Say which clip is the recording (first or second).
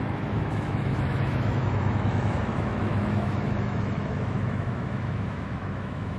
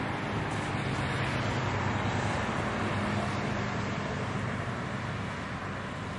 second